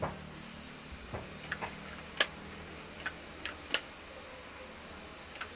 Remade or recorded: recorded